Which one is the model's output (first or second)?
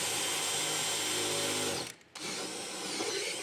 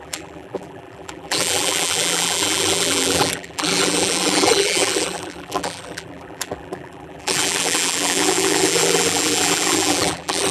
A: second